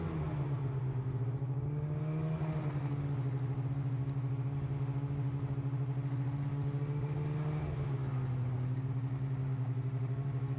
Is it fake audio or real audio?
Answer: real